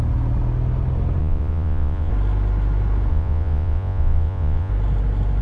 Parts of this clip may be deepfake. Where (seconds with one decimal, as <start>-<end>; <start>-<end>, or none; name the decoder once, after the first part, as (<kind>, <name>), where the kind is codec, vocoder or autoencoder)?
1.2-2.1 (vocoder, Vocos); 3.1-4.7